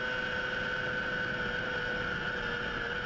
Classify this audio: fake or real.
real